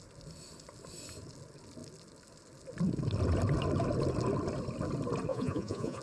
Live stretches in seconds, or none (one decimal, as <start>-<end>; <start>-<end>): 0.0-5.3